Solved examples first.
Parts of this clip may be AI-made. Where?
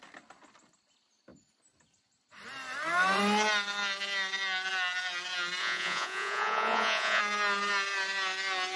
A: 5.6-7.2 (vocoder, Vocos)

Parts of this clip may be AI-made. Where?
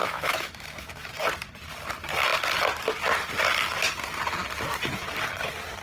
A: 0.0-1.1 (autoencoder, DAC-VAE)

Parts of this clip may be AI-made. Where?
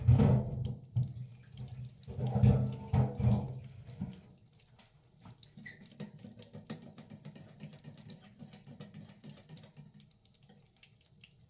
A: none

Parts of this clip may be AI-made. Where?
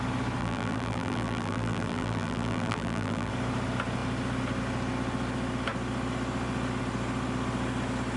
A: 0.4-3.3 (vocoder, BigVGAN v2)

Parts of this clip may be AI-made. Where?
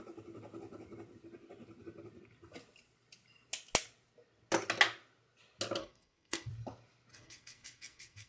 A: 5.8-6.5 (codec, SNAC); 7.1-8.3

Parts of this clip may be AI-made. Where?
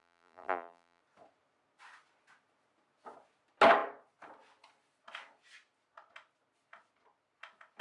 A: 0.0-1.0 (vocoder, BigVGAN v2)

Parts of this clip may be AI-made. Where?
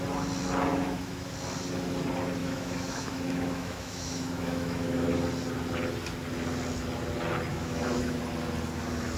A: 0.7-1.3 (autoencoder, DAC-VAE); 2.4-5.1; 7.5-8.2